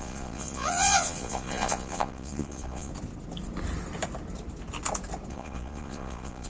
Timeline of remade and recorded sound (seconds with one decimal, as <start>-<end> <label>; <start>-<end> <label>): 0.0-2.9 remade; 2.9-5.3 recorded; 5.3-6.5 remade